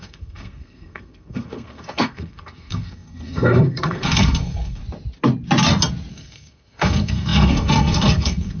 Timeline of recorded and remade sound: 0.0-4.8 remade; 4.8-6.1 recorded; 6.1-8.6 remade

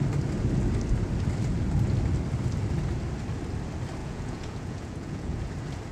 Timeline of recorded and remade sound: 0.0-4.0 recorded; 4.0-5.5 remade; 5.5-5.9 recorded

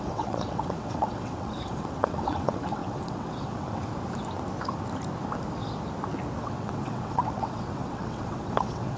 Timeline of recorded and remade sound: 0.0-3.9 remade; 3.9-6.4 recorded; 6.4-9.0 remade

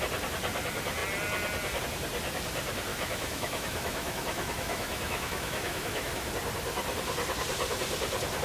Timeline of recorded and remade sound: 0.0-2.9 recorded; 2.9-6.3 remade; 6.3-8.4 recorded

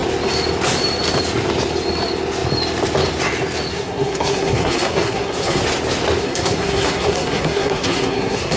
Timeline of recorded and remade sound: 0.0-3.7 recorded; 3.7-5.6 remade; 5.6-6.2 recorded; 6.2-8.6 remade

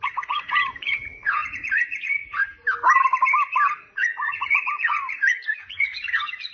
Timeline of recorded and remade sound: 0.0-2.4 remade; 2.4-3.8 recorded; 3.8-6.5 remade

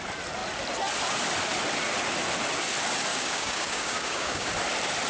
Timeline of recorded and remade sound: 0.0-3.1 recorded; 3.1-4.5 remade; 4.5-5.1 recorded

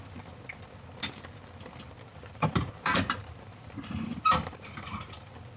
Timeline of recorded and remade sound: 0.0-2.1 recorded; 2.1-5.1 remade; 5.1-5.6 recorded